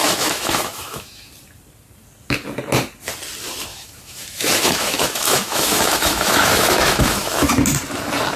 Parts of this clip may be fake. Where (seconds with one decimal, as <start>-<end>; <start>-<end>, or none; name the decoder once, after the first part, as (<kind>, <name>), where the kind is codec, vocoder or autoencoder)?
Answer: 0.0-1.3 (autoencoder, DAC-VAE); 3.7-7.5